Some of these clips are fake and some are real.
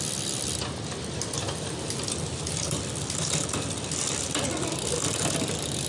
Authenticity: real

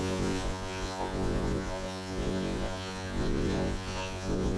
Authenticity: fake